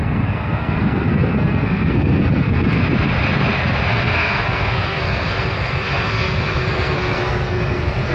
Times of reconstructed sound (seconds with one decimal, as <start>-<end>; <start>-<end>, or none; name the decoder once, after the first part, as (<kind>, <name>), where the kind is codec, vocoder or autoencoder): 0.0-2.8 (codec, SNAC); 3.9-8.1